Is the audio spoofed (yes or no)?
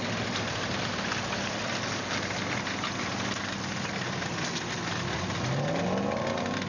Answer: no